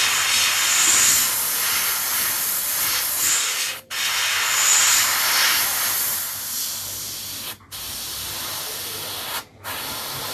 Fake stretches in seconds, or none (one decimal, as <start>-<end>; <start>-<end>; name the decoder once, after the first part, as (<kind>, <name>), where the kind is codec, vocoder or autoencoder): 3.4-3.9 (codec, DAC)